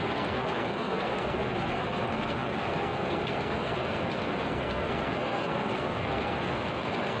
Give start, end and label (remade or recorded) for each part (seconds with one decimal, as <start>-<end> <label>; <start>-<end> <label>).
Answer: 0.0-7.2 remade